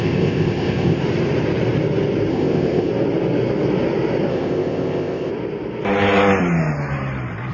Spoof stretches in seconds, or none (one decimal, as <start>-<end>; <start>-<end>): 0.0-1.0; 2.3-2.9; 4.3-5.3